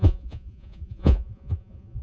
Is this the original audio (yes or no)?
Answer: no